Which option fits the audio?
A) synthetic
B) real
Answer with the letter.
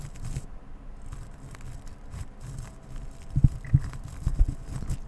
B